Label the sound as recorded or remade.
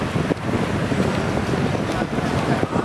recorded